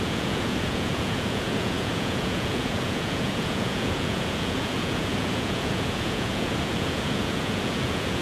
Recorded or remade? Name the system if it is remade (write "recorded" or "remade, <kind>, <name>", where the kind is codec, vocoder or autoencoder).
remade, vocoder, Vocos